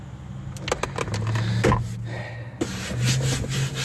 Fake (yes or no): no